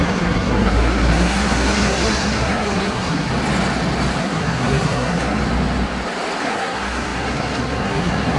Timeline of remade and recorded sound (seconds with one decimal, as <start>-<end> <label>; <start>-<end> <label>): 0.0-3.3 remade; 3.3-4.2 recorded; 4.2-5.4 remade; 5.4-6.4 recorded; 6.4-8.4 remade